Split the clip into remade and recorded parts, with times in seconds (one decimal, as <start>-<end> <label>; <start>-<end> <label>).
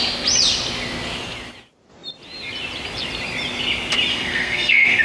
0.0-4.1 recorded; 4.1-5.0 remade